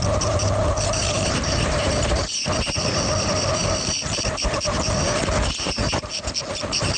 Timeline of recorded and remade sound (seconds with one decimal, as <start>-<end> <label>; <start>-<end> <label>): 0.0-1.0 recorded; 1.0-5.2 remade; 5.2-7.0 recorded